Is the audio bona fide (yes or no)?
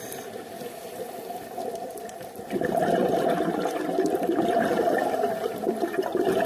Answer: no